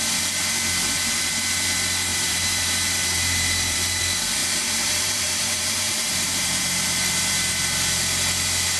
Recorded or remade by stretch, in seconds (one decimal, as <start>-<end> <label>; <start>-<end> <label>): 0.0-2.1 recorded; 2.1-4.0 remade; 4.0-4.4 recorded; 4.4-7.5 remade; 7.5-8.8 recorded